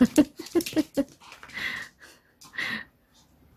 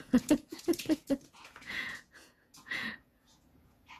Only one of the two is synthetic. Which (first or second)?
second